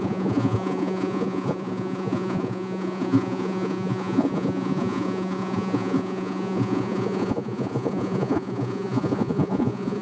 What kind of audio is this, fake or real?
fake